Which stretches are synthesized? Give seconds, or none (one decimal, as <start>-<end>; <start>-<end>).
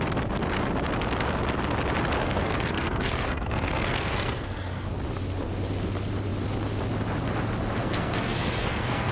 2.2-4.9; 7.8-9.1